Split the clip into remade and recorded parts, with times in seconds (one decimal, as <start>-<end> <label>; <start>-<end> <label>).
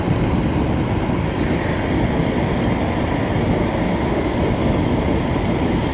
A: 0.0-3.9 recorded; 3.9-4.4 remade; 4.4-5.9 recorded